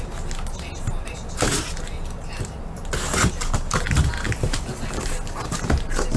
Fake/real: real